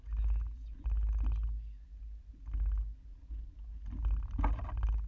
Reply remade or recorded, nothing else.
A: recorded